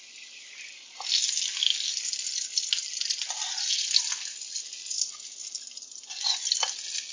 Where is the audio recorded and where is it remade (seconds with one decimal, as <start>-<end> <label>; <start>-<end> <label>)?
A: 0.0-7.1 recorded